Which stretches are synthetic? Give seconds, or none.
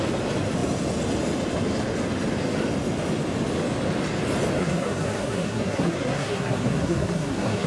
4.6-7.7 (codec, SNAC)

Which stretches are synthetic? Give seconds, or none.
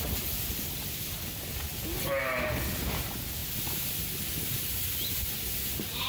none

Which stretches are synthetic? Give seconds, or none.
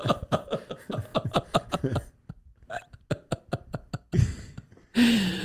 none